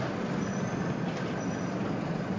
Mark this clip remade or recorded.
recorded